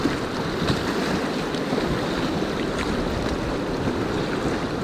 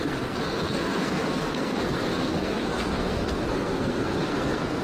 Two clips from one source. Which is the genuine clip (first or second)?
first